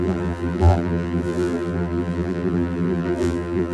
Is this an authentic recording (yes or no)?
no